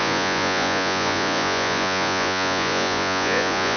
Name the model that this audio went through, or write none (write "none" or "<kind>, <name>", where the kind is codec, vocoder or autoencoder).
vocoder, Vocos